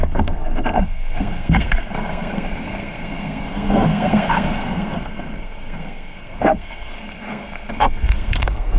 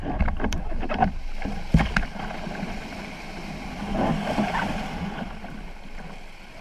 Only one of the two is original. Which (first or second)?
second